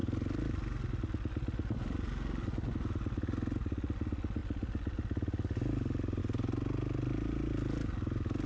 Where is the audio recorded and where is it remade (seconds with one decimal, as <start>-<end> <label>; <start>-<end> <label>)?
0.0-8.5 recorded

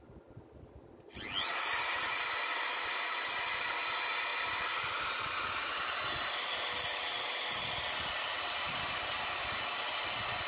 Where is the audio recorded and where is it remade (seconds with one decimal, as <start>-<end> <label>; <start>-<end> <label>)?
0.0-10.5 recorded

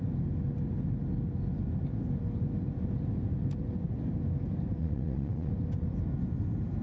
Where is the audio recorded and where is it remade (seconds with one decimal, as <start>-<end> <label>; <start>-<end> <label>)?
0.0-4.8 recorded; 4.8-5.5 remade; 5.5-6.8 recorded